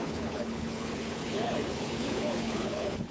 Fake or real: fake